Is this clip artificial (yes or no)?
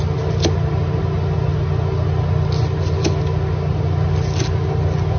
no